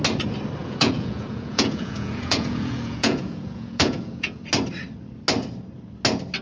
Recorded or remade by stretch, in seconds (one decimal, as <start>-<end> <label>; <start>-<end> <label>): 0.0-0.6 recorded; 0.6-4.4 remade; 4.4-6.4 recorded